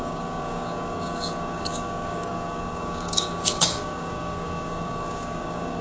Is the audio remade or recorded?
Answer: remade